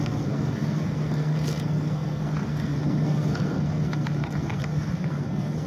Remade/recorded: remade